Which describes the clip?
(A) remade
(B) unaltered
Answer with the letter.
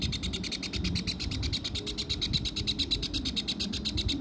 B